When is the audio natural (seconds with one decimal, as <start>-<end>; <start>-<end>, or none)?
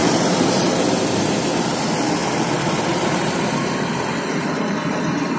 0.0-5.4